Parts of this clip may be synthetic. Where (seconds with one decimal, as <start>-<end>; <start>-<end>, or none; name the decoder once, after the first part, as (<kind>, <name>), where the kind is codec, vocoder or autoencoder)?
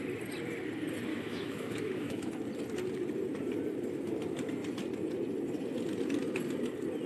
1.1-2.3 (autoencoder, DAC-VAE)